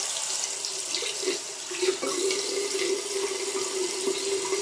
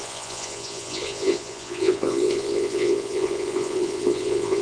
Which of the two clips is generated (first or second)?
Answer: second